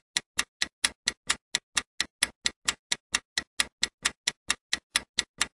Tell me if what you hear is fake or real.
real